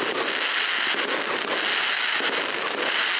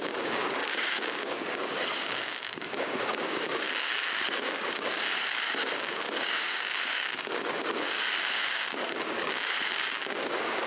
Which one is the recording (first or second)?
first